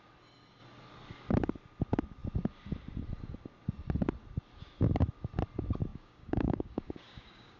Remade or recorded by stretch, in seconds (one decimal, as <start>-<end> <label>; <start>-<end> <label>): 0.0-5.9 recorded; 5.9-7.6 remade